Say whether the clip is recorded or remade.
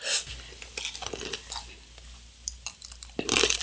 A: recorded